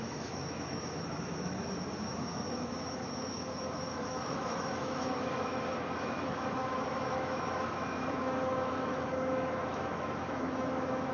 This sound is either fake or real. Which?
fake